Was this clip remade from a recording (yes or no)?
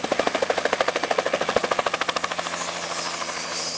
no